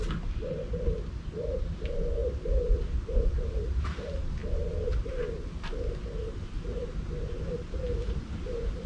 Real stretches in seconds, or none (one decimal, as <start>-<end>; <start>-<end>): 0.0-8.9